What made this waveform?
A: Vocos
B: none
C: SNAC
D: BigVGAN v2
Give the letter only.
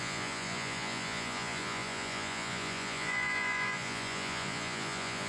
A